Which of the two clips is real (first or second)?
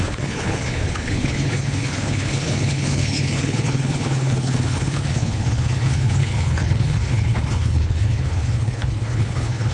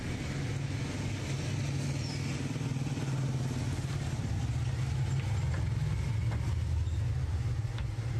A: second